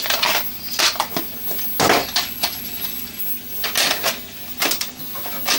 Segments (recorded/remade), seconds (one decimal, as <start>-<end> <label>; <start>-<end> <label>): 0.0-2.0 recorded; 2.0-3.2 remade; 3.2-4.5 recorded; 4.5-5.0 remade; 5.0-5.6 recorded